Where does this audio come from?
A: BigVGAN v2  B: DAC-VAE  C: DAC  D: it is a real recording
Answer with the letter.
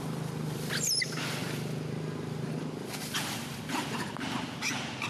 D